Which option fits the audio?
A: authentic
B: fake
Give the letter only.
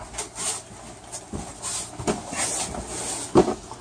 A